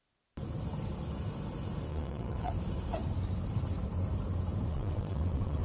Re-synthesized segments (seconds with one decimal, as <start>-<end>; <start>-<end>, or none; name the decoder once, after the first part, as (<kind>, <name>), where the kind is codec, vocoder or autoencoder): 1.9-2.5 (vocoder, WaveNeXt); 4.7-5.6